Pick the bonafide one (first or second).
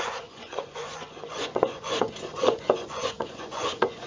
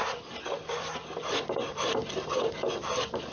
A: second